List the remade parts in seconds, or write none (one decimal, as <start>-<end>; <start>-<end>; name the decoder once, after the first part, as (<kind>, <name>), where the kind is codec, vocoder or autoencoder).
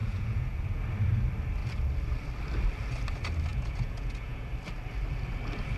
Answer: 0.0-0.8 (vocoder, Vocos); 3.5-4.5